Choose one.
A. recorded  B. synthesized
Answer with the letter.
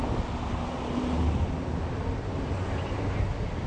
A